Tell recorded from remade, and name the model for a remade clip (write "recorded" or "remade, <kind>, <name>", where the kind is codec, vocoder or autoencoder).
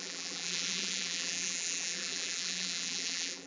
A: remade, vocoder, BigVGAN v2